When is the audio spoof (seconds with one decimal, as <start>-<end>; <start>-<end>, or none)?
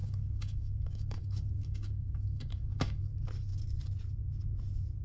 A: 0.0-3.0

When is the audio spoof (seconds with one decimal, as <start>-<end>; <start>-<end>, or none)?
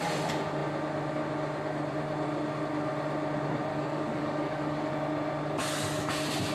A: 3.7-4.9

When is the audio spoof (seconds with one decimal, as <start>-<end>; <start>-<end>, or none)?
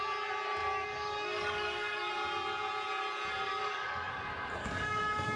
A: 0.6-2.1; 3.5-4.1; 4.6-5.4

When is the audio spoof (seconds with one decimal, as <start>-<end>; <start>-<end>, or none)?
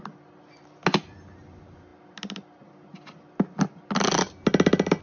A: none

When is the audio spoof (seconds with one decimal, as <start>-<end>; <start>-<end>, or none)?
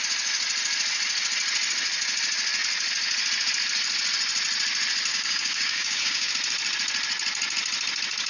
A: 5.1-6.3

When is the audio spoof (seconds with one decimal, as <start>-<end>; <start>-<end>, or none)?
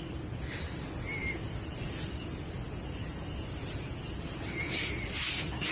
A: none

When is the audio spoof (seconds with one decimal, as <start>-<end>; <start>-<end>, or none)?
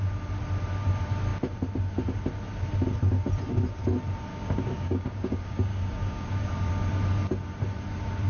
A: 4.3-6.7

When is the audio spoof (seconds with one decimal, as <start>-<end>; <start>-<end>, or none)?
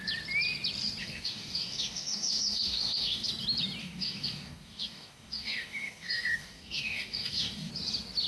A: 1.0-3.3; 3.8-7.7